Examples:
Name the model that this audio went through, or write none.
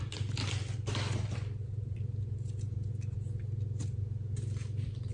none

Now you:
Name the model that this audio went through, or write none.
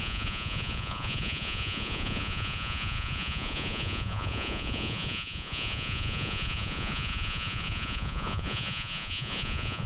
vocoder, Vocos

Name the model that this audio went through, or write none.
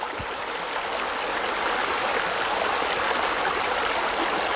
none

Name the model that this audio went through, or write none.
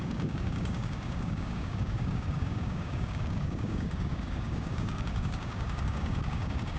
codec, DAC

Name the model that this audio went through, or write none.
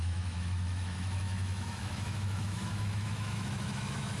autoencoder, DAC-VAE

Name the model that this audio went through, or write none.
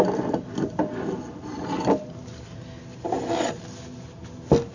none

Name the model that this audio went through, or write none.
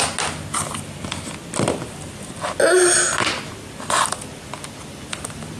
none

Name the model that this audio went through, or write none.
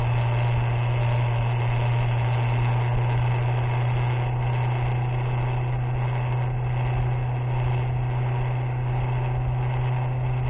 none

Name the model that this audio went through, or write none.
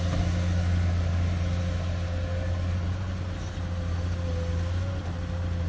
none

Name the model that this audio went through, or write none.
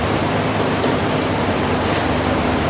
vocoder, BigVGAN v2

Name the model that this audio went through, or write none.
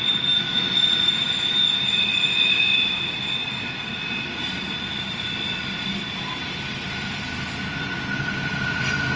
none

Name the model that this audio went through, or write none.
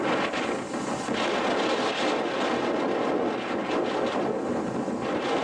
none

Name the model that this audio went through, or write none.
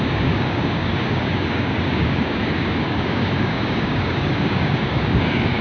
codec, DAC